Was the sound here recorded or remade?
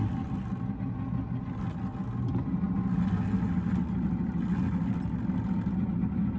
recorded